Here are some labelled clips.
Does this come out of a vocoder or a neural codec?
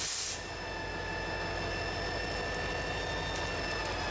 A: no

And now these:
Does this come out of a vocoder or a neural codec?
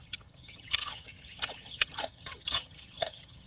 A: yes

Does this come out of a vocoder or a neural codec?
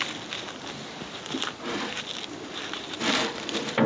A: no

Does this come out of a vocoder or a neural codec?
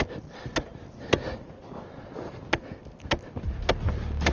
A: no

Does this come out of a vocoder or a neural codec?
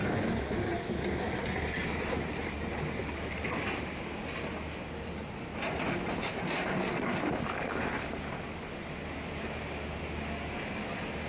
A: no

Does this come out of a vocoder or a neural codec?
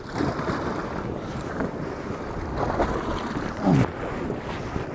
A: no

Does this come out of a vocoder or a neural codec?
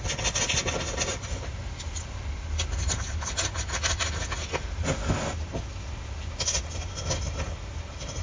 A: no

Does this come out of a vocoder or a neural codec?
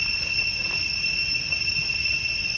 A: no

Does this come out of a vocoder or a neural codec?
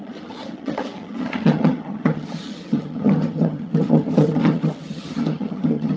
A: yes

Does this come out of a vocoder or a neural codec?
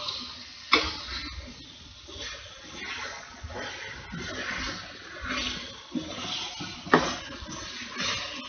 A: no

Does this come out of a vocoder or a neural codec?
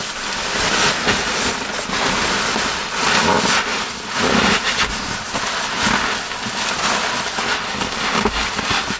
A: no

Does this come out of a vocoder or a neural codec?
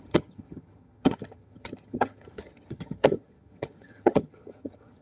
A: yes